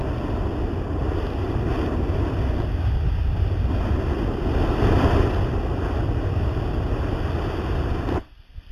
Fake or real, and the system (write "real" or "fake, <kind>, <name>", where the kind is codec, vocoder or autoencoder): real